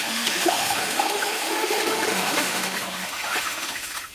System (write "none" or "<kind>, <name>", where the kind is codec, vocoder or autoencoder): autoencoder, DAC-VAE